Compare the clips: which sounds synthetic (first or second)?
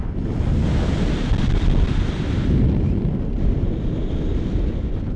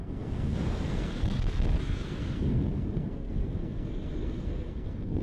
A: second